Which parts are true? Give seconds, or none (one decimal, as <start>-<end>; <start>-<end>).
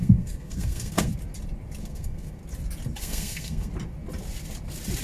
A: 1.1-1.8; 2.4-3.0; 3.7-5.0